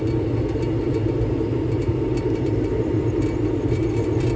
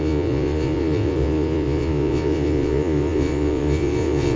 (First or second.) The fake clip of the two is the second